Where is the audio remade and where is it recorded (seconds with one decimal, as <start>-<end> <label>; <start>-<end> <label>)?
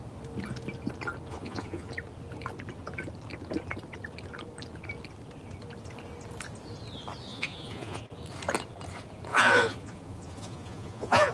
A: 0.0-1.3 recorded; 1.3-1.9 remade; 1.9-7.3 recorded; 7.3-8.0 remade; 8.0-9.3 recorded; 9.3-11.3 remade